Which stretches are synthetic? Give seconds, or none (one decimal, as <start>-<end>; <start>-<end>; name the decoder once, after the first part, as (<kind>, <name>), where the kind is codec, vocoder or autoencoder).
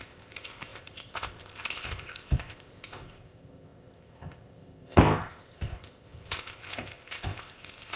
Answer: 0.0-8.0 (codec, ZipCodec)